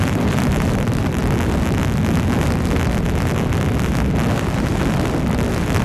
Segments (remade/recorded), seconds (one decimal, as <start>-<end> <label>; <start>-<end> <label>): 0.0-1.2 remade; 1.2-4.7 recorded; 4.7-5.8 remade